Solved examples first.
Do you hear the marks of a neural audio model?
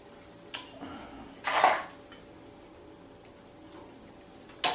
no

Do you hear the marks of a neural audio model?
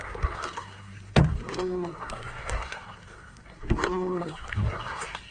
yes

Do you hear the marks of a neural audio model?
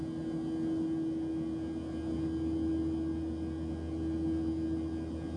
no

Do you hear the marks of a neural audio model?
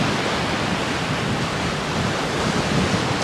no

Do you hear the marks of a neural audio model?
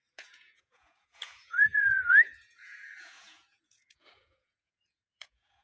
yes